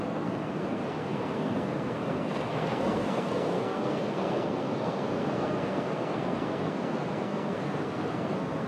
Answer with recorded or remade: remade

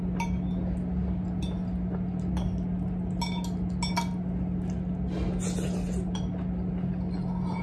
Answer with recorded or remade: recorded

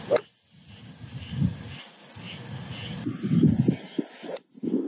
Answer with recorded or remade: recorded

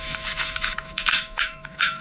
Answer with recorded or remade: remade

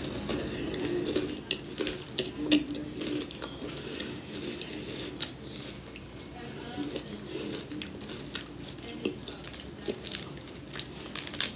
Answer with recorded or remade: recorded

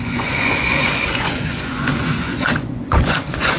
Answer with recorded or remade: remade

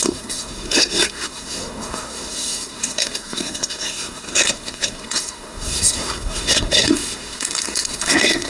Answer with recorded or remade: remade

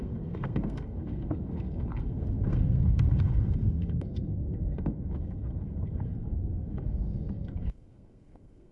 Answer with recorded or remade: remade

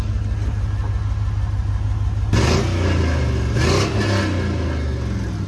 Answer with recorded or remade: recorded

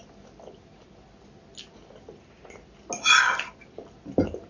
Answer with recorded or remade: recorded